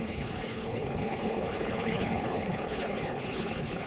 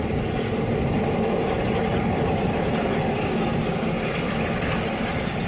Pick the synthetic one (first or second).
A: first